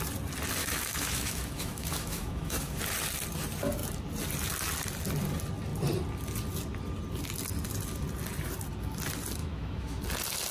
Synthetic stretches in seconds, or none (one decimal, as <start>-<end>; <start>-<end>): 0.6-2.8; 9.4-10.0